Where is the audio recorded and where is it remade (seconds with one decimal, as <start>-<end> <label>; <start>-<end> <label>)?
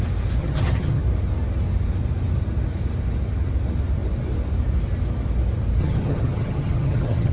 0.0-0.4 recorded; 0.4-1.0 remade; 1.0-5.8 recorded; 5.8-7.3 remade